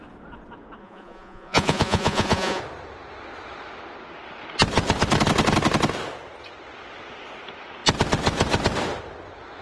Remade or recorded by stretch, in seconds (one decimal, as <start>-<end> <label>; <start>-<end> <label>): 0.0-0.8 recorded; 0.8-2.6 remade; 2.6-9.6 recorded